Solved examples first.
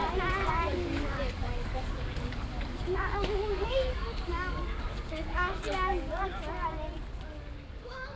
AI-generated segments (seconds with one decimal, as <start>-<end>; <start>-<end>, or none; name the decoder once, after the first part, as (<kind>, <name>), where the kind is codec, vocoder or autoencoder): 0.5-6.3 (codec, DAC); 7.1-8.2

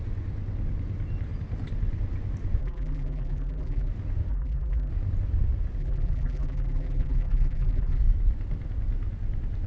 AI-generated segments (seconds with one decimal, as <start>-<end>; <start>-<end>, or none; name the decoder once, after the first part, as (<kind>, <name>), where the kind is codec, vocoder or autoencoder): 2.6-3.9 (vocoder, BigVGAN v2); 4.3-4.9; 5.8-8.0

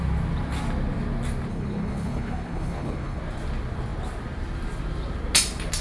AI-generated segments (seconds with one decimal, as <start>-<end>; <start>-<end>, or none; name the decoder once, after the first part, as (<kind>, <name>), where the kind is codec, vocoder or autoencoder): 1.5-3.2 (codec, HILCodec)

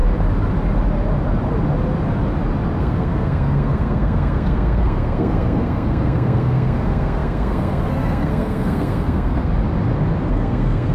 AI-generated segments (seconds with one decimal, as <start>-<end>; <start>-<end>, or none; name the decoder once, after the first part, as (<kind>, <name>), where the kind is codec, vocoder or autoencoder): 2.8-9.5 (codec, SNAC); 10.3-10.9